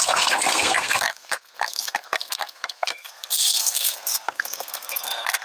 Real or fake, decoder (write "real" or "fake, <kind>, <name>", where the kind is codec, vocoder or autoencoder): fake, codec, SNAC